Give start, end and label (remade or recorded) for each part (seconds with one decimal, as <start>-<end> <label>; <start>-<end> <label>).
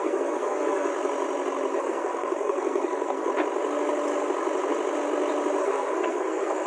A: 0.0-0.9 remade; 0.9-1.8 recorded; 1.8-3.3 remade; 3.3-5.6 recorded; 5.6-6.7 remade